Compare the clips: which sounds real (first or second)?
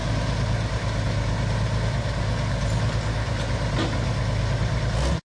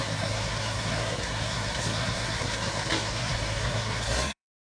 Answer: first